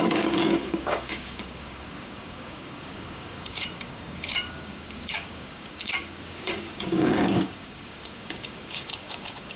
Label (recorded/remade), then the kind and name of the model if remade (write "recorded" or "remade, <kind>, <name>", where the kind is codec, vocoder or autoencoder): remade, codec, DAC